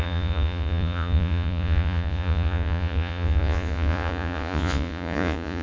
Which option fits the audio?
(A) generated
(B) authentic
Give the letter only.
A